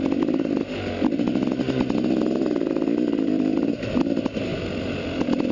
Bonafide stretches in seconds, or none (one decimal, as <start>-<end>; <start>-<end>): 0.0-5.5